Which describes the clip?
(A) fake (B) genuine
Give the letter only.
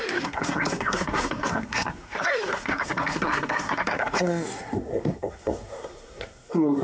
A